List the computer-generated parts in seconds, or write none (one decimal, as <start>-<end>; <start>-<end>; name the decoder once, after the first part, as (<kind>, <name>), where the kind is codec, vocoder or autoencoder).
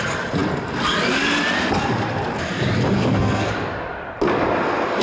3.0-3.5 (codec, SNAC)